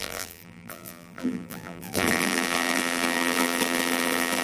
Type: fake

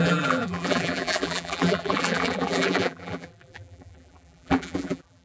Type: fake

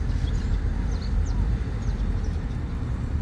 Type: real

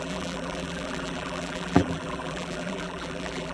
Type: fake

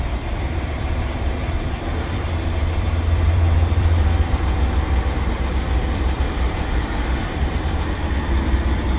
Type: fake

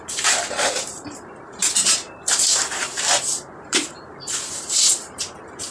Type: fake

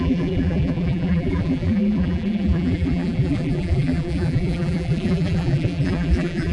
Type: fake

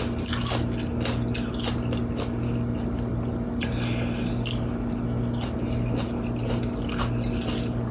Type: real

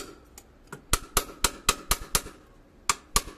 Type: real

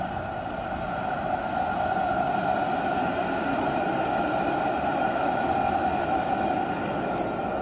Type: real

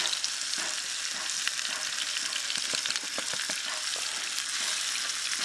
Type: real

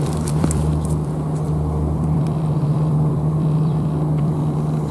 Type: fake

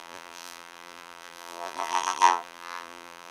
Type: fake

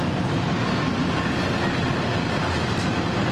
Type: real